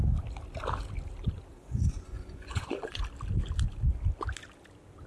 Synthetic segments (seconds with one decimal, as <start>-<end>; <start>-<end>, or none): 1.5-3.0